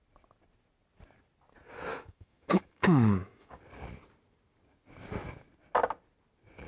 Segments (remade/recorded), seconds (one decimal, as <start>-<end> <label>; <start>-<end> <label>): 0.0-1.9 recorded; 1.9-3.6 remade; 3.6-6.7 recorded